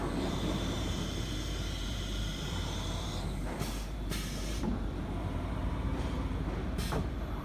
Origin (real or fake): fake